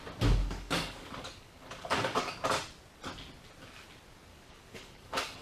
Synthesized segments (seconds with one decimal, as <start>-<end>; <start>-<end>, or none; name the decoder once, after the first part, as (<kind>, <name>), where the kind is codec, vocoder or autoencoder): 0.4-2.3 (codec, DAC); 4.3-5.4